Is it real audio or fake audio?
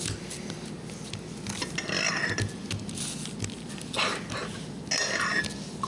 real